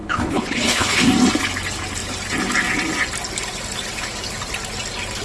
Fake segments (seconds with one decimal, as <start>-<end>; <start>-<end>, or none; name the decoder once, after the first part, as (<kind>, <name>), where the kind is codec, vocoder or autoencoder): 0.0-1.1 (codec, HILCodec)